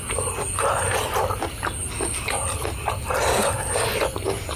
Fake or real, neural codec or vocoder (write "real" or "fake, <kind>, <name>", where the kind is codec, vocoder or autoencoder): real